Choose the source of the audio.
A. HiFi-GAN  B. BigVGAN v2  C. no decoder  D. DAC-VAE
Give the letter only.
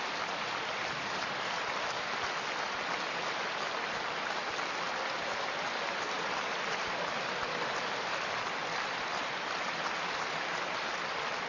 C